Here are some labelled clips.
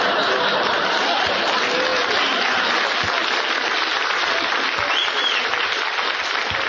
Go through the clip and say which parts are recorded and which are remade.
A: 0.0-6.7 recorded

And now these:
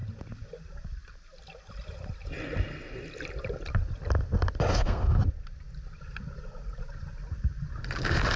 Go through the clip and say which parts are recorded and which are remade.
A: 0.0-4.7 recorded; 4.7-5.2 remade; 5.2-8.4 recorded